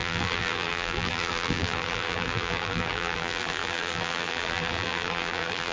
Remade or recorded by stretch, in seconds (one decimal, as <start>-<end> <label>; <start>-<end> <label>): 0.0-5.7 remade